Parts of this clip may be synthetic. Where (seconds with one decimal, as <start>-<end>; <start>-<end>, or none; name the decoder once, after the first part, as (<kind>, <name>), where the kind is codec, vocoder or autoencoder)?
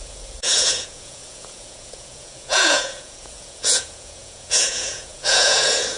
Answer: 0.0-6.0 (vocoder, Vocos)